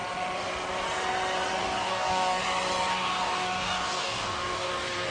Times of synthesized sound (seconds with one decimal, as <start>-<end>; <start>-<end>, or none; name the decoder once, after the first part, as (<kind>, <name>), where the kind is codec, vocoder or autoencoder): 1.6-2.4 (codec, DAC); 2.9-5.1